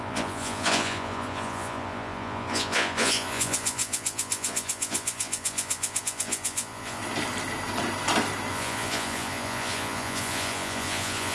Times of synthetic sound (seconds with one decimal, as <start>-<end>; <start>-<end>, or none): 0.0-7.0; 8.5-11.3